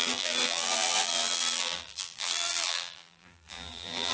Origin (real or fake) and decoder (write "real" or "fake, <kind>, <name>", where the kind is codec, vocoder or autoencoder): fake, vocoder, BigVGAN v2